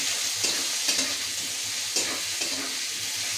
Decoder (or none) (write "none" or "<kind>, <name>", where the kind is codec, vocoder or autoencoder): none